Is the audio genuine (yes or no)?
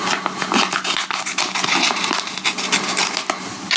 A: yes